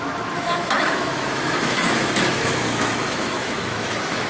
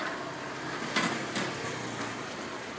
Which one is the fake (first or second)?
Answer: first